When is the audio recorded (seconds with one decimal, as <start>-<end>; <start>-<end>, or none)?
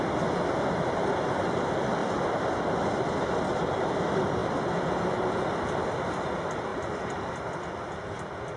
0.0-8.6